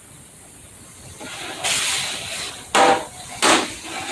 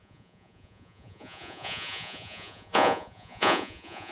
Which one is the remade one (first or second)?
second